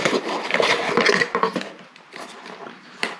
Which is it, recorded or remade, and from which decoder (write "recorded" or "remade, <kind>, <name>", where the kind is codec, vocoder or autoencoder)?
remade, vocoder, BigVGAN v2